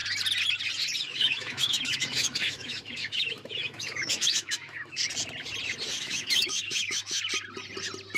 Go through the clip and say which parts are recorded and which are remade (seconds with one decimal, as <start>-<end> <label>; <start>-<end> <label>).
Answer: 0.0-1.0 recorded; 1.0-5.0 remade; 5.0-5.9 recorded; 5.9-7.2 remade; 7.2-8.2 recorded